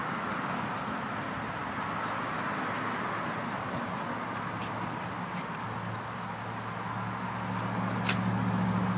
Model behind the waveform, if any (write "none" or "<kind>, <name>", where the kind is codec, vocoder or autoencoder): none